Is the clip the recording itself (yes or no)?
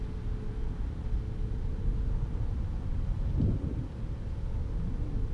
yes